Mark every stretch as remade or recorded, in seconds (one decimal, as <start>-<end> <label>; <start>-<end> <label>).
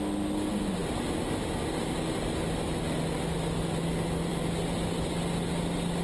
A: 0.0-6.0 recorded